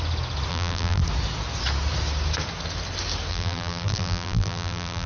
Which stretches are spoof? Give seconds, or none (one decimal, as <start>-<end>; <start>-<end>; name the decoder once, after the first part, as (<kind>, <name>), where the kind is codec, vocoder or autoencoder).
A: 0.5-1.0 (vocoder, BigVGAN v2); 3.3-5.1